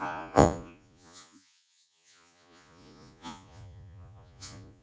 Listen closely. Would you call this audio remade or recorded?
remade